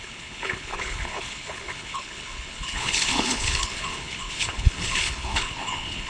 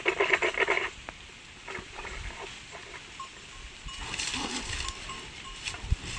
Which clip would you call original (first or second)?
second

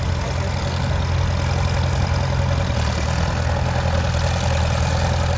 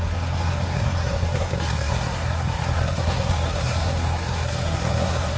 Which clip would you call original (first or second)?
first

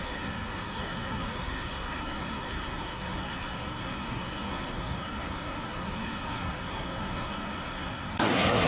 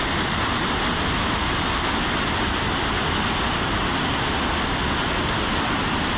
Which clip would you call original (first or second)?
second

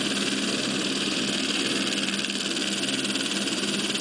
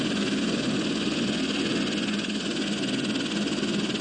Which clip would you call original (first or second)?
first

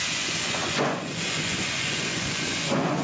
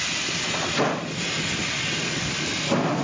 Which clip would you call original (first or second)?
second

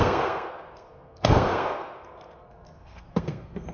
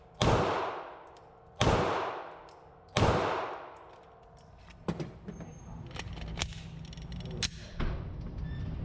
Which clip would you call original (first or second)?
second